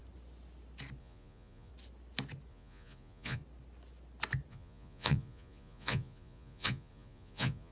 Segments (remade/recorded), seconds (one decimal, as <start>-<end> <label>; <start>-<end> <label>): 0.0-1.0 recorded; 1.0-1.7 remade; 1.7-2.5 recorded; 2.5-3.4 remade; 3.4-4.5 recorded; 4.5-7.7 remade